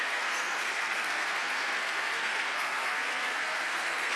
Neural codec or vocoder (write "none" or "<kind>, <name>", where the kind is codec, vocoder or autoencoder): codec, SNAC